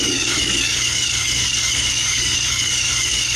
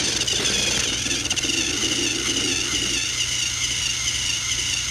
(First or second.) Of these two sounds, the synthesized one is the first